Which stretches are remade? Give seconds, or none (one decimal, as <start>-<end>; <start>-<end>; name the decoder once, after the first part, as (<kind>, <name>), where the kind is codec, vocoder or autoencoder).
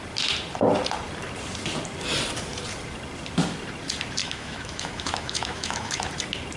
4.2-6.1 (autoencoder, DAC-VAE)